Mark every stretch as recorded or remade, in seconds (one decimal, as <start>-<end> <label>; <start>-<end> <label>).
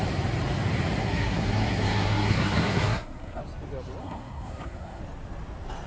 0.0-1.0 recorded; 1.0-3.4 remade; 3.4-4.0 recorded; 4.0-5.0 remade; 5.0-5.9 recorded